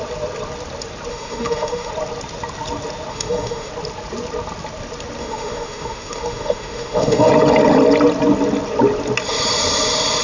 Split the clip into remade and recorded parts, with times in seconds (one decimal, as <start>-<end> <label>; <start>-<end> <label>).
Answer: 0.0-1.1 recorded; 1.1-1.9 remade; 1.9-3.1 recorded; 3.1-3.7 remade; 3.7-5.2 recorded; 5.2-7.3 remade; 7.3-10.2 recorded